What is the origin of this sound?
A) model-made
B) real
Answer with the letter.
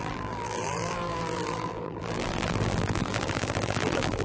A